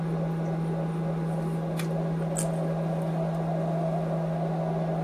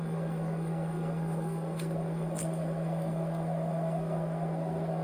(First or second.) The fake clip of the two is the second